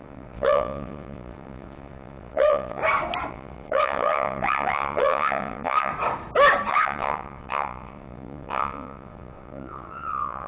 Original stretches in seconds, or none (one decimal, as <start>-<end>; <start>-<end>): 2.8-3.3; 5.9-6.7